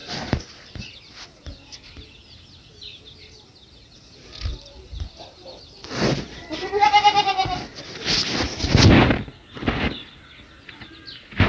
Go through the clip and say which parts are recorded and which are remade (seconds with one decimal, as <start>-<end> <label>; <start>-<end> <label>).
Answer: 0.0-4.5 recorded; 4.5-7.8 remade; 7.8-11.5 recorded